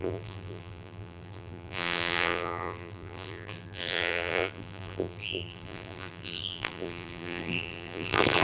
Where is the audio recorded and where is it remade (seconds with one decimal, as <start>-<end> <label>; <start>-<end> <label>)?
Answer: 0.0-8.4 remade